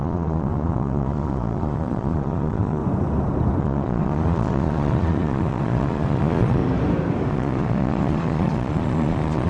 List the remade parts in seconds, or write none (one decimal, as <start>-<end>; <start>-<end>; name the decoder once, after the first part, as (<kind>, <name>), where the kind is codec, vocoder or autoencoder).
0.0-2.8 (vocoder, Vocos); 3.6-6.6; 7.3-9.5